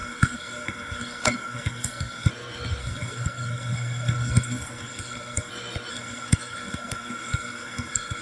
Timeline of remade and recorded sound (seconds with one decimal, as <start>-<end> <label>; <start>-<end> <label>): 0.0-2.3 remade; 2.3-2.8 recorded; 2.8-5.5 remade; 5.5-5.9 recorded; 5.9-8.2 remade